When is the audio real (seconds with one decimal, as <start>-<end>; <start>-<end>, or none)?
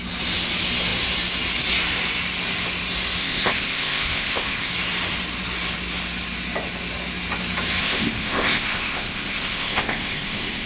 0.0-3.2; 4.7-7.8